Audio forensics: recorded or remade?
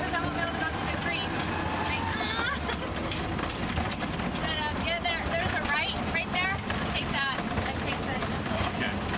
recorded